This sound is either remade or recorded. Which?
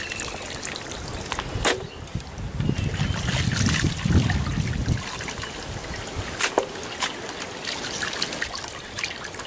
recorded